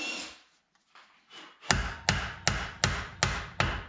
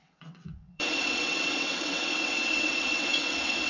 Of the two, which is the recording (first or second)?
first